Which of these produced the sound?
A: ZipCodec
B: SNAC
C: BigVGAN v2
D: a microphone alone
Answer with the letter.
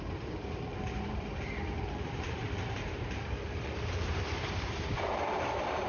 C